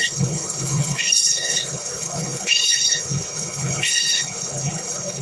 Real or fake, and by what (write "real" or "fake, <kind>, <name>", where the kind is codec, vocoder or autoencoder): fake, codec, HILCodec